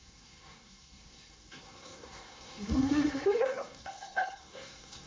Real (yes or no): no